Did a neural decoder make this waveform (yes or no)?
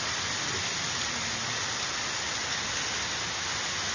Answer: no